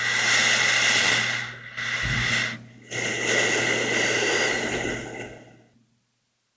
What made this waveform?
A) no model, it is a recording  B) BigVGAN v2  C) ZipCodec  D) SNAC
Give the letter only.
A